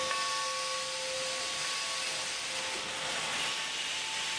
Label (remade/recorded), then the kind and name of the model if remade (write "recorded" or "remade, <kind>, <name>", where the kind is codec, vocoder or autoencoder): recorded